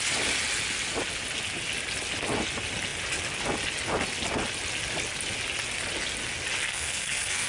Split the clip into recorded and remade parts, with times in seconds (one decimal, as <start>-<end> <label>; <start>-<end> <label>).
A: 0.0-6.7 recorded; 6.7-7.5 remade